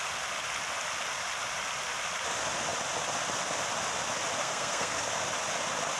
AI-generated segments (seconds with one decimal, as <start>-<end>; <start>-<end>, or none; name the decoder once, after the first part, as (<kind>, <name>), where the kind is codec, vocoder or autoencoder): 4.4-5.0 (codec, SNAC)